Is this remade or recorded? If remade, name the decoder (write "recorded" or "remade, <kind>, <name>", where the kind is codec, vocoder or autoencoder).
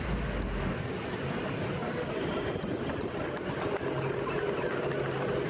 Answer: recorded